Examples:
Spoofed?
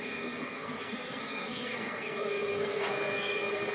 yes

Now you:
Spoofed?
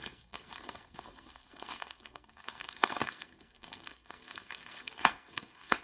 yes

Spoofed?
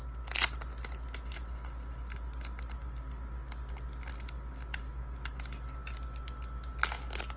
no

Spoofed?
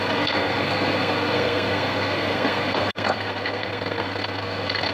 yes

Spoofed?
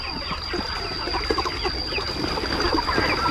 no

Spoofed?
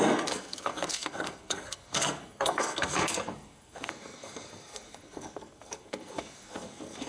yes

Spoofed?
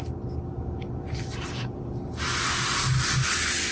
no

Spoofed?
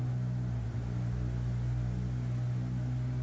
no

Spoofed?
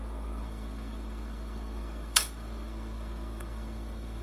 yes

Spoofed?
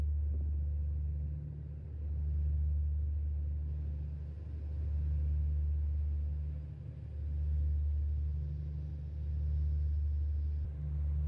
no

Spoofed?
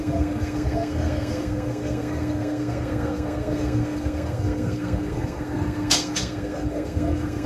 yes